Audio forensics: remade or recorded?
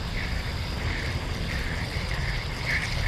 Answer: recorded